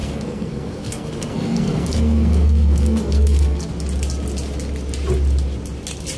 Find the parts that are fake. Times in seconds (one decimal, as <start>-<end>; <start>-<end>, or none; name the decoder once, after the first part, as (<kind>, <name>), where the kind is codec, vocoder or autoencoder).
0.0-3.7 (codec, SNAC)